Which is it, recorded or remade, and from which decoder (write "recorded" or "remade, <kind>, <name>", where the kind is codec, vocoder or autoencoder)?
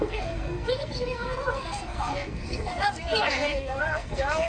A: remade, codec, SNAC